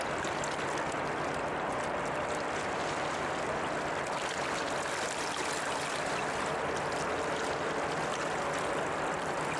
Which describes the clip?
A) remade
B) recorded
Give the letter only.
B